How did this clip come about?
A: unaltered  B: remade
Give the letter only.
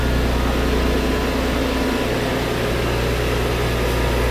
A